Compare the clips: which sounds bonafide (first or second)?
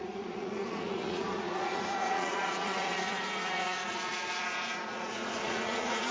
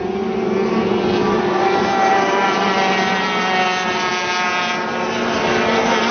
second